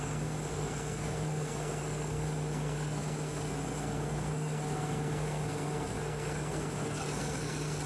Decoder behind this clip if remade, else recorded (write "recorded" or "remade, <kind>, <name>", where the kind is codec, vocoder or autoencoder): remade, codec, SNAC